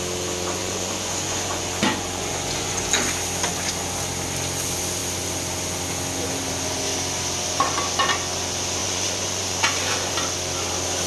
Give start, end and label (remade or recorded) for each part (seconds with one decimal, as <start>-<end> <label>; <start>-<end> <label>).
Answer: 0.0-0.6 recorded; 0.6-2.9 remade; 2.9-8.8 recorded; 8.8-10.1 remade; 10.1-11.1 recorded